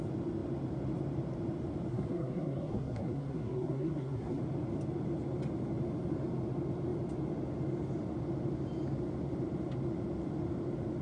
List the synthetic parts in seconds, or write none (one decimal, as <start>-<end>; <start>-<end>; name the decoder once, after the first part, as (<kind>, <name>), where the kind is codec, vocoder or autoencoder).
1.9-4.4 (codec, SNAC)